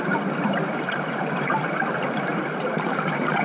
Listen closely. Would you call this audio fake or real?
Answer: fake